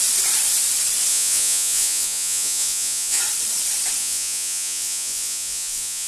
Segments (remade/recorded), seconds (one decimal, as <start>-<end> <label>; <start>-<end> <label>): 0.0-1.1 recorded; 1.1-3.2 remade; 3.2-4.0 recorded; 4.0-6.1 remade